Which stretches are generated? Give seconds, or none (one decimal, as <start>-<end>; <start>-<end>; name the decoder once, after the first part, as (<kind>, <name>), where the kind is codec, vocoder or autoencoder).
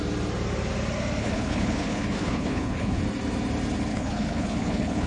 1.2-3.0 (codec, HILCodec); 3.9-5.1